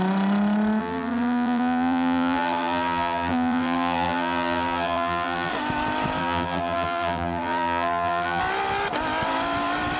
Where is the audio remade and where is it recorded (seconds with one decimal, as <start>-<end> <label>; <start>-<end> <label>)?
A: 0.0-0.8 recorded; 0.8-5.5 remade; 5.5-6.2 recorded; 6.2-8.4 remade; 8.4-10.0 recorded